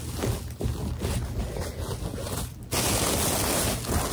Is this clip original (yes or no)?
yes